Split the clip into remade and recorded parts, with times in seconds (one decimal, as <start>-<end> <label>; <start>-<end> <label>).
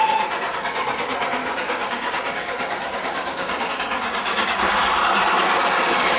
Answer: 0.0-1.4 recorded; 1.4-3.7 remade; 3.7-4.2 recorded; 4.2-4.7 remade; 4.7-6.2 recorded